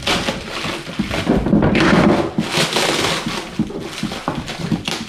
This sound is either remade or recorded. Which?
recorded